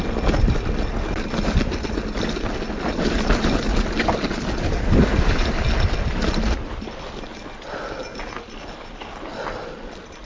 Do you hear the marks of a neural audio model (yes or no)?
no